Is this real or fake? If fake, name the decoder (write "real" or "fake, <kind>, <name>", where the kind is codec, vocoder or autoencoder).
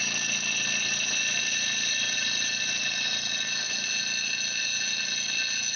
real